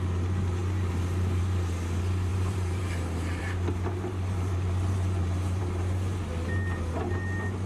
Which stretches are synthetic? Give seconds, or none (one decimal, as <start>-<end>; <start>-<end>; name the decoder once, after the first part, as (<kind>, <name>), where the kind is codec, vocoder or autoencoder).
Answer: 2.3-5.6 (vocoder, BigVGAN v2)